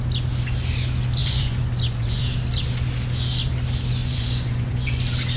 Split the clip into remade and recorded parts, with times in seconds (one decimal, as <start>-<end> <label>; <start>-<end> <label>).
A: 0.0-1.2 recorded; 1.2-2.2 remade; 2.2-4.0 recorded; 4.0-5.0 remade; 5.0-5.4 recorded

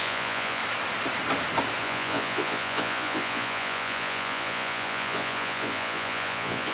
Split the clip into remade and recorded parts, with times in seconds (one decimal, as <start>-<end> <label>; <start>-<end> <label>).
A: 0.0-0.6 remade; 0.6-1.8 recorded; 1.8-6.7 remade